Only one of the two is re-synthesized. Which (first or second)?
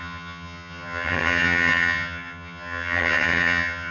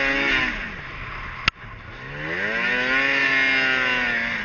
first